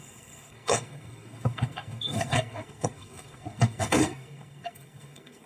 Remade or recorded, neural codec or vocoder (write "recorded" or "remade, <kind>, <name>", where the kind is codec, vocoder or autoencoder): remade, codec, SNAC